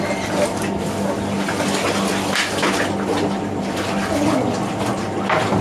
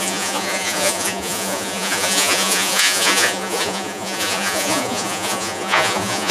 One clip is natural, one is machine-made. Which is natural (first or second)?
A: first